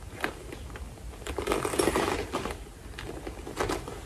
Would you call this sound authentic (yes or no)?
yes